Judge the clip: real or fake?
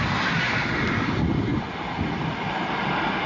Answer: real